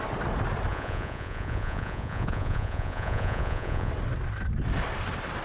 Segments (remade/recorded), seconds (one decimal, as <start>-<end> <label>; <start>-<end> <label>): 0.0-0.7 recorded; 0.7-3.9 remade; 3.9-5.4 recorded